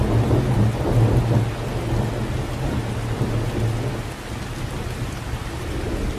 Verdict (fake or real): real